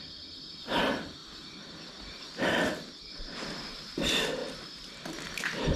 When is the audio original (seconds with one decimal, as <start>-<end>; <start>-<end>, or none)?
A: 0.0-4.4